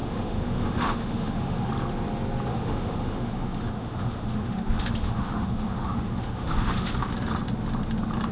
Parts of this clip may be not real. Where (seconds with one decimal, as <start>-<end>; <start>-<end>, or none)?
0.0-1.7; 2.5-7.0